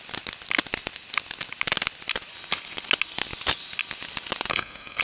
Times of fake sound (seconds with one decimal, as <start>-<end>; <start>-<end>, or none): 4.5-5.0